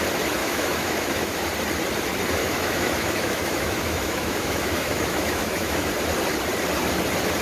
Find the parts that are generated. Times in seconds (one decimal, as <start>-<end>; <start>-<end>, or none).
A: 0.4-1.5; 2.4-5.9